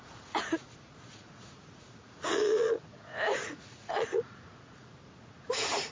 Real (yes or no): no